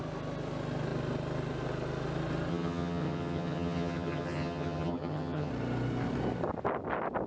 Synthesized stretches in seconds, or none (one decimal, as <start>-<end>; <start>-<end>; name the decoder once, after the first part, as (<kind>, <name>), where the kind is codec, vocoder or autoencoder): 2.5-5.5 (vocoder, HiFi-GAN)